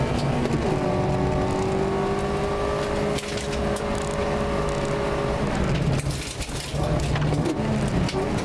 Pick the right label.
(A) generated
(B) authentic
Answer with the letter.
B